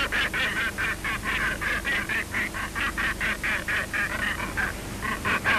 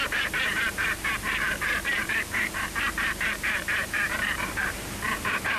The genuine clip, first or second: first